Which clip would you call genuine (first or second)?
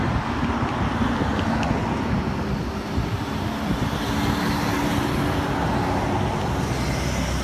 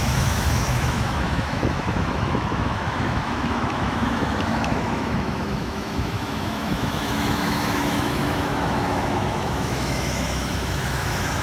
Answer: first